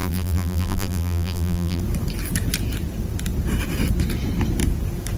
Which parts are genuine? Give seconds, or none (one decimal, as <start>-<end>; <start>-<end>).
1.8-5.2